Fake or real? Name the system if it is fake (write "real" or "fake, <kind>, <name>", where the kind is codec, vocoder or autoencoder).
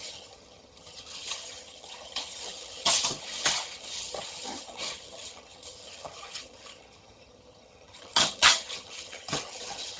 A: fake, vocoder, HiFi-GAN